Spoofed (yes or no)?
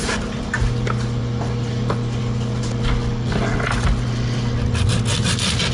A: no